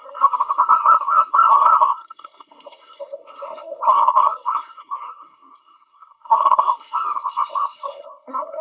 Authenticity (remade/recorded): remade